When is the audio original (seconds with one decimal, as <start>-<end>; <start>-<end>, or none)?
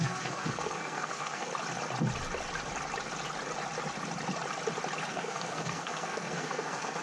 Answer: 1.5-5.1